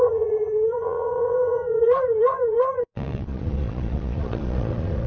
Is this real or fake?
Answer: fake